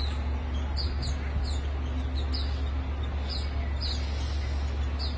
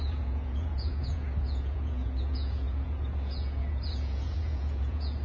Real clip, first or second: first